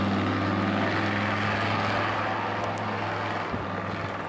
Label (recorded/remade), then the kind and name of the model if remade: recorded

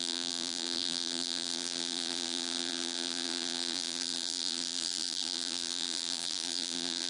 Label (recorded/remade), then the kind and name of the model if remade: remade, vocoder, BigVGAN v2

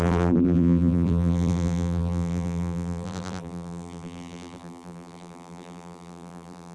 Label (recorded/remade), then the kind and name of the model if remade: remade, vocoder, BigVGAN v2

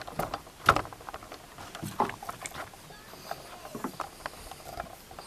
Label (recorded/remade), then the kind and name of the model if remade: recorded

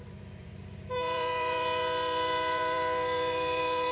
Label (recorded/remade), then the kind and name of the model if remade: remade, vocoder, BigVGAN v2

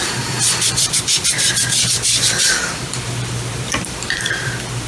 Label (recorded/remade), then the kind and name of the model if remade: remade, vocoder, BigVGAN v2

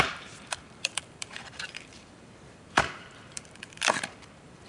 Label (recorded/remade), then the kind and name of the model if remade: remade, vocoder, BigVGAN v2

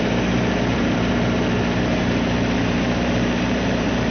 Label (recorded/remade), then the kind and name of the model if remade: remade, vocoder, BigVGAN v2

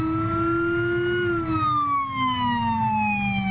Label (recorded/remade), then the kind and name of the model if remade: recorded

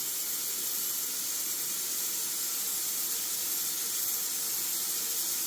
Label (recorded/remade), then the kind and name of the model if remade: recorded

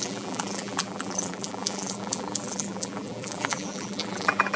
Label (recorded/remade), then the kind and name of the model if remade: remade, vocoder, BigVGAN v2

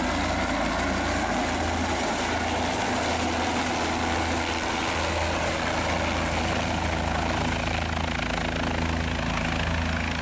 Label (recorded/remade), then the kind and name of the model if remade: recorded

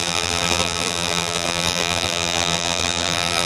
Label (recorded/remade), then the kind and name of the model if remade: remade, vocoder, BigVGAN v2